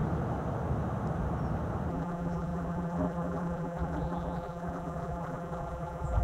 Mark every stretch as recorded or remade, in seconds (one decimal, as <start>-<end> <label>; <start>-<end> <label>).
0.0-1.9 recorded; 1.9-6.2 remade